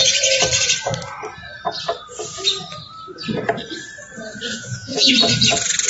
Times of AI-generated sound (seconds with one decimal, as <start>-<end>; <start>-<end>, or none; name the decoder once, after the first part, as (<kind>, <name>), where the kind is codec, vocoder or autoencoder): 4.5-5.1 (vocoder, Vocos)